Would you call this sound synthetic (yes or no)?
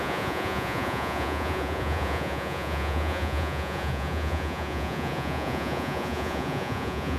yes